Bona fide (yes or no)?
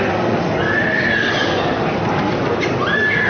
yes